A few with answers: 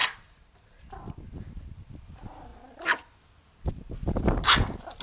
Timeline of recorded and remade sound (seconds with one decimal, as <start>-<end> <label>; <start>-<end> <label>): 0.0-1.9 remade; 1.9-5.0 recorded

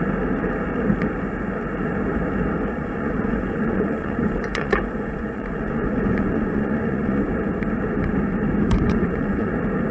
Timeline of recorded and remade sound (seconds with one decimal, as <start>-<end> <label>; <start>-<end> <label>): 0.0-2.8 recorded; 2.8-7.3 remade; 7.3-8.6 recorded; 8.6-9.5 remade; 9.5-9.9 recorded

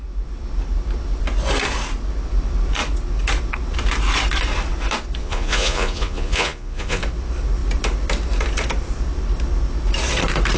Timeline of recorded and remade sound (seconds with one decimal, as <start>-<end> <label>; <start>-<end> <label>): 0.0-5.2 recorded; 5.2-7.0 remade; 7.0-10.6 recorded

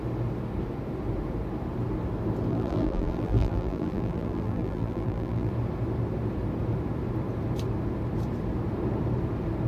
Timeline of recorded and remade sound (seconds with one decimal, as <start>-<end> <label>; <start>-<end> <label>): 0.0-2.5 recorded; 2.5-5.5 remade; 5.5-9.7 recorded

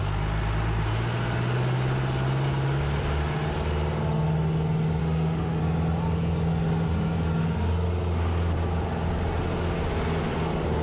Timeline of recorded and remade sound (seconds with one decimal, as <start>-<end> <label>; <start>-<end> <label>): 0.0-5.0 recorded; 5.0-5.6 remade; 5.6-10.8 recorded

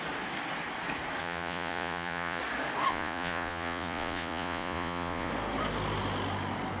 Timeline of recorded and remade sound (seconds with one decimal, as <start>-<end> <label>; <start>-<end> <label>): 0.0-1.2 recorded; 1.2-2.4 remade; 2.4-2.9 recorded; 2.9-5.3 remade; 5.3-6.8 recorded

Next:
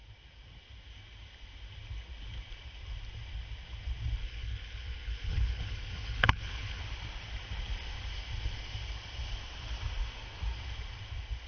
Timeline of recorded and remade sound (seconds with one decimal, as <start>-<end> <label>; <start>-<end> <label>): 0.0-4.2 recorded; 4.2-6.8 remade; 6.8-11.5 recorded